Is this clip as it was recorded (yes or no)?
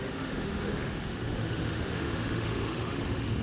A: no